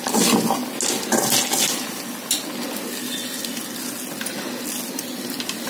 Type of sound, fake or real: real